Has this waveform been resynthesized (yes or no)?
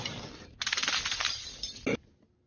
no